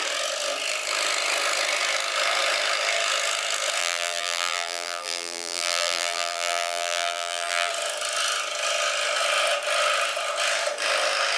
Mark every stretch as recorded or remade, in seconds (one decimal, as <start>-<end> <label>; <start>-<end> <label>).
0.0-3.8 recorded; 3.8-7.7 remade; 7.7-11.4 recorded